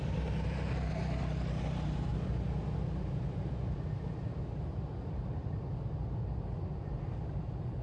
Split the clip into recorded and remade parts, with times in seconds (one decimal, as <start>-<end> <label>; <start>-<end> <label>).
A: 0.0-7.8 recorded

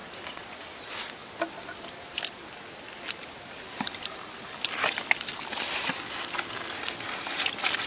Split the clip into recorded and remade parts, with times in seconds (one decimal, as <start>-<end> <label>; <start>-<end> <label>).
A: 0.0-0.6 remade; 0.6-7.9 recorded

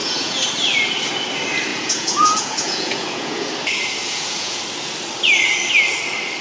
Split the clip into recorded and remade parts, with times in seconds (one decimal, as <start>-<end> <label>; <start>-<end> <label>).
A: 0.0-0.5 remade; 0.5-1.7 recorded; 1.7-3.5 remade; 3.5-4.0 recorded; 4.0-4.6 remade; 4.6-6.4 recorded

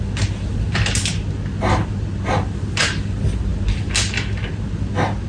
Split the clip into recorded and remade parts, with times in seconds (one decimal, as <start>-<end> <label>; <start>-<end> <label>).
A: 0.0-5.3 recorded

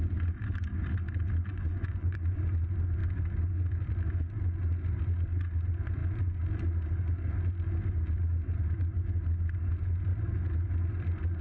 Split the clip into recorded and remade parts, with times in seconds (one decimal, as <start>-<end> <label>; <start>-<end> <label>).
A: 0.0-1.5 recorded; 1.5-2.4 remade; 2.4-11.4 recorded

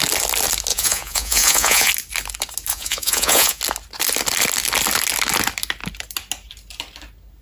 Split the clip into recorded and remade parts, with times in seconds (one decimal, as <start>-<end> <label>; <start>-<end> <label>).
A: 0.0-0.7 recorded; 0.7-1.9 remade; 1.9-2.7 recorded; 2.7-3.6 remade; 3.6-7.4 recorded